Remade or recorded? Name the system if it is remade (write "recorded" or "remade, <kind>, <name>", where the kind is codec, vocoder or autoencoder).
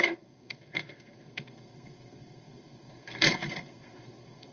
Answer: remade, codec, SNAC